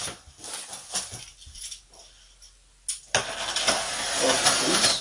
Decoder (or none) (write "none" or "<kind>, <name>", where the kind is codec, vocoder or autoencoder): none